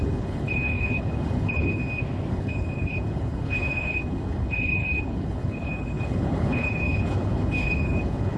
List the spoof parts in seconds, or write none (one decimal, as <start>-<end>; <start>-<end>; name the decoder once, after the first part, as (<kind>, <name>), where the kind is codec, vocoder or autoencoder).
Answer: 0.0-1.8 (codec, HILCodec); 2.3-8.4

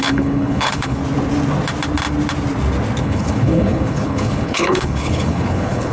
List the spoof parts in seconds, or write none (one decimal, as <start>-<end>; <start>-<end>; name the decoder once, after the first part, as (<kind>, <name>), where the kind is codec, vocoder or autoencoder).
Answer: 0.0-1.0 (codec, HILCodec); 3.0-5.9

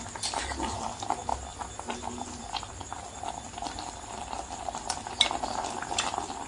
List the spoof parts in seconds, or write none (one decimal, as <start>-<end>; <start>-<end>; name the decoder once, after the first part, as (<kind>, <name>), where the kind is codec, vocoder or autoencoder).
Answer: none